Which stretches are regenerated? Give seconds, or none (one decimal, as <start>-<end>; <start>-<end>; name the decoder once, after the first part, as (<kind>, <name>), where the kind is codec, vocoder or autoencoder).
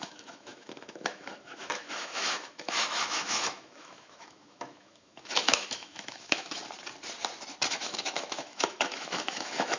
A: 0.0-6.6 (autoencoder, DAC-VAE); 7.7-9.8